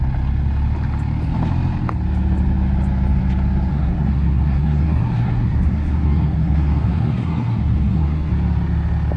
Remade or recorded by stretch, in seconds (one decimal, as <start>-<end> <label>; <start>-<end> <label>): 0.0-3.7 recorded; 3.7-8.3 remade; 8.3-9.2 recorded

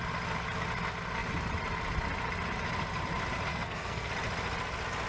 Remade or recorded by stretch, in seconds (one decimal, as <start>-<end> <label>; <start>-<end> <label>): 0.0-3.5 recorded; 3.5-4.1 remade; 4.1-5.1 recorded

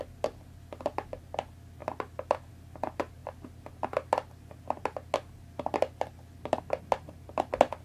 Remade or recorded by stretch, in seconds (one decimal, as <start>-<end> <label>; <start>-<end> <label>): 0.0-7.8 recorded

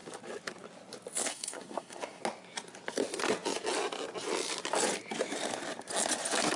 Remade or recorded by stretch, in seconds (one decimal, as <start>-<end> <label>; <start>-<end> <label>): 0.0-1.3 recorded; 1.3-2.2 remade; 2.2-6.6 recorded

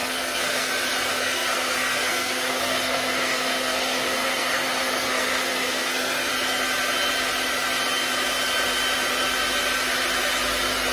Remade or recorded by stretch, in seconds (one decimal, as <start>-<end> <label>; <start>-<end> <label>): 0.0-0.7 remade; 0.7-1.1 recorded; 1.1-6.3 remade; 6.3-10.9 recorded